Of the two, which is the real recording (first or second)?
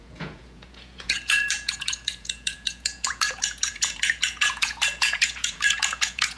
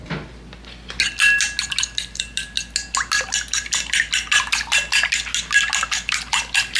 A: second